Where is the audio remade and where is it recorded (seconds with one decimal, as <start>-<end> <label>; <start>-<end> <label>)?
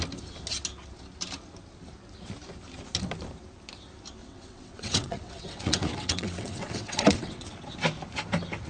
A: 0.0-4.2 recorded; 4.2-7.5 remade; 7.5-8.7 recorded